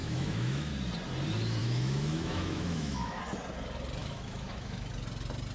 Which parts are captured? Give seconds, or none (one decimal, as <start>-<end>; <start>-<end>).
0.7-1.6; 3.2-4.0; 4.9-5.5